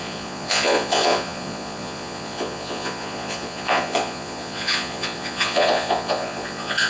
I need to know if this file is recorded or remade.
remade